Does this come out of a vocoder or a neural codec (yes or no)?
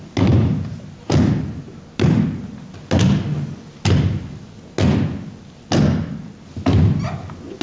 no